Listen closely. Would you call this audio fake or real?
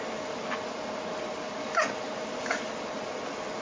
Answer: real